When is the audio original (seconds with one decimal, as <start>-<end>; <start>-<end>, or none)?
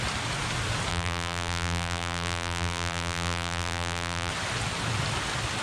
0.0-0.9; 4.3-5.6